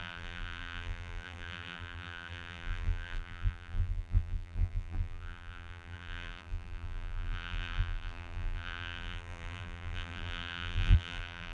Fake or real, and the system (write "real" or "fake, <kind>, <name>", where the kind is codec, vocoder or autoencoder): fake, vocoder, BigVGAN v2